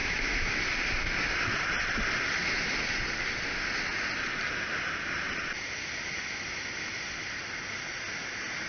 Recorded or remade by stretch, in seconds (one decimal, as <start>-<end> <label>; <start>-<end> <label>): 0.0-0.6 remade; 0.6-8.7 recorded